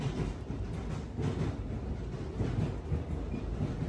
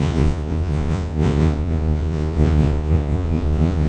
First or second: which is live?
first